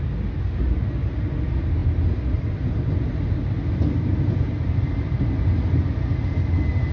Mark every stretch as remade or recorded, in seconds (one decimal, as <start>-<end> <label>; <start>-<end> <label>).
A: 0.0-6.9 recorded